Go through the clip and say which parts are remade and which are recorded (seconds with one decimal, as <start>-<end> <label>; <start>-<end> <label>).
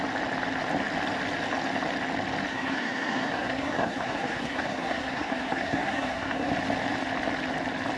0.0-2.5 recorded; 2.5-6.5 remade; 6.5-8.0 recorded